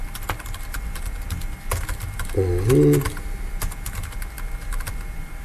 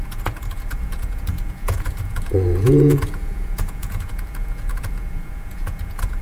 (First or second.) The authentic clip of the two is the first